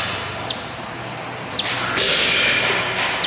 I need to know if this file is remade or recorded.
recorded